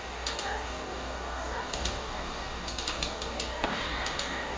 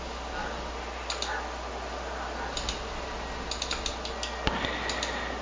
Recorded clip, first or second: second